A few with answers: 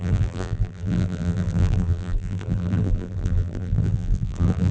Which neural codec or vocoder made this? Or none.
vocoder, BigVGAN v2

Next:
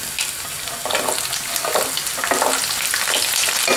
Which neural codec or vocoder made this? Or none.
none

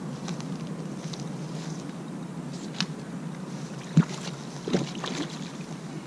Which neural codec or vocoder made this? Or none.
none